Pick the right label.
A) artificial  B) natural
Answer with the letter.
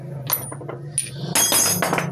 B